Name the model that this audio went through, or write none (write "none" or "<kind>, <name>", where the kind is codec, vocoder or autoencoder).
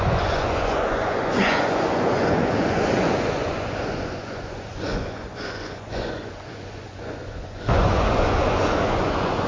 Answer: vocoder, Vocos